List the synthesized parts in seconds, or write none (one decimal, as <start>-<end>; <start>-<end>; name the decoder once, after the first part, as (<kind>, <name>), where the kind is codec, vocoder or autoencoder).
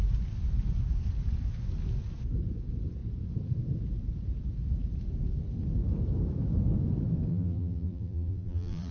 7.3-8.9 (vocoder, BigVGAN v2)